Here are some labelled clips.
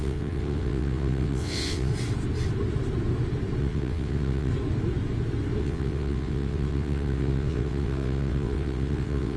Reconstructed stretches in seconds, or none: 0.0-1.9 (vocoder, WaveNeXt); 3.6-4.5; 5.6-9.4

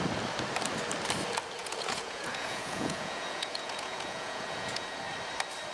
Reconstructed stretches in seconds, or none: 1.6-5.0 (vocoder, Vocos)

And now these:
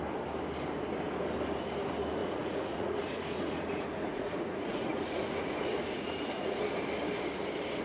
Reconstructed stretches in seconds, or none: 2.2-6.6 (vocoder, Vocos)